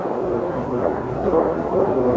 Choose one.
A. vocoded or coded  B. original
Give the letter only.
A